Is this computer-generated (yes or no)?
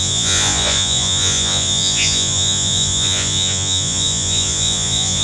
yes